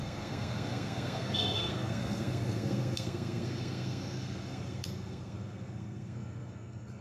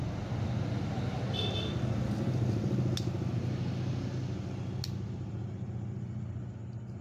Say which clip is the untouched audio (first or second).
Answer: second